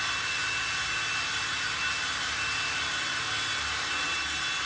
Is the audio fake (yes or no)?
no